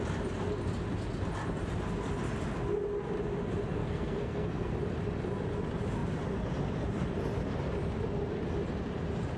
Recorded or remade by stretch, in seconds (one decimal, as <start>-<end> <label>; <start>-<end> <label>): 0.0-3.8 recorded; 3.8-4.7 remade; 4.7-9.4 recorded